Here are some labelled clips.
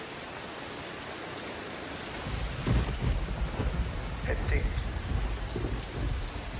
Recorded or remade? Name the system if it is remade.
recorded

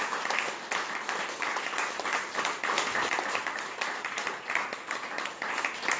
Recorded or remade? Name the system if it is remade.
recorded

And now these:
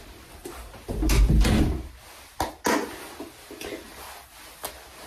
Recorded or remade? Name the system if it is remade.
recorded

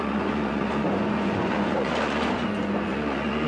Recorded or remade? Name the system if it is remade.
remade, vocoder, Vocos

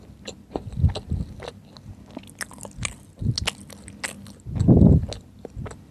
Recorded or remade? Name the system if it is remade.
recorded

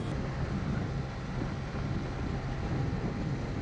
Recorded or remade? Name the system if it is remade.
recorded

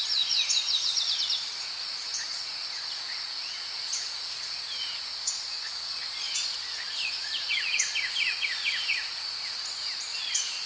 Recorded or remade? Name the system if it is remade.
remade, vocoder, Vocos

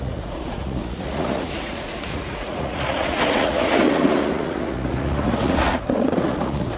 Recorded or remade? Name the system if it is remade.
remade, vocoder, Vocos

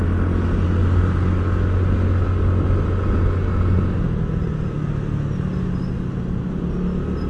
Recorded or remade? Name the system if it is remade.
recorded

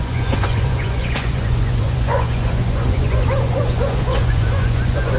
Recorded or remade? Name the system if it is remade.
remade, vocoder, Vocos